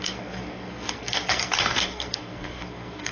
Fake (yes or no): yes